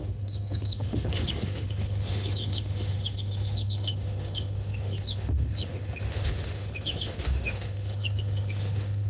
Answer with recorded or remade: remade